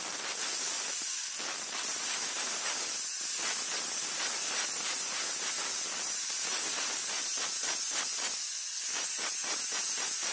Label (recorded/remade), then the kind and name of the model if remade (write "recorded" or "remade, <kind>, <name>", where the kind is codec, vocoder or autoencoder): recorded